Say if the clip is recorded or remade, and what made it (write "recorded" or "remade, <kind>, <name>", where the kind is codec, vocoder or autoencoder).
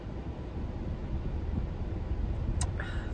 recorded